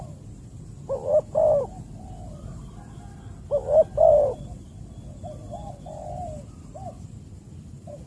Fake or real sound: real